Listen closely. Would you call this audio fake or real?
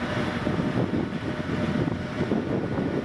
real